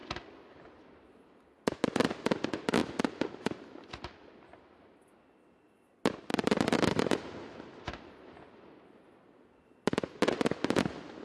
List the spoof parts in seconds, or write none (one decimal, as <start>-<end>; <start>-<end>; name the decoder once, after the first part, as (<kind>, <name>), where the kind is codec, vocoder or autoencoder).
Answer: 2.8-4.9 (vocoder, BigVGAN v2)